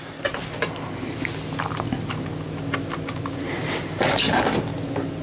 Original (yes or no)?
yes